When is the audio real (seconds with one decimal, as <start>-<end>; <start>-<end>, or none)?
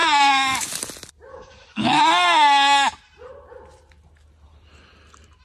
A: 0.7-1.3; 2.0-5.4